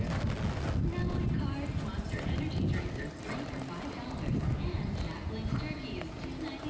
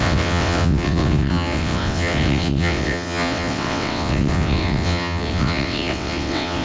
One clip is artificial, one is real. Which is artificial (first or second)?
second